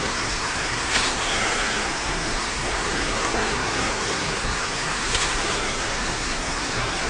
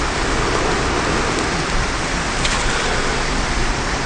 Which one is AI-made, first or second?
first